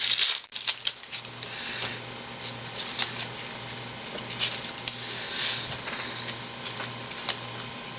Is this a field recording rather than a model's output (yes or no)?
yes